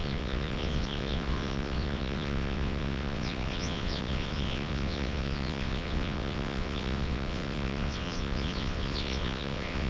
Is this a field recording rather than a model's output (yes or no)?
no